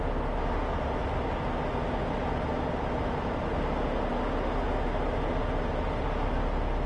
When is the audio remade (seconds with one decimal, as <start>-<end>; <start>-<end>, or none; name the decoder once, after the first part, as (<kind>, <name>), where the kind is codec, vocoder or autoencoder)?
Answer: none